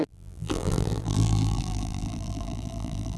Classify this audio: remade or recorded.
remade